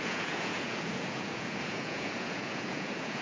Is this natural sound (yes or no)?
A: no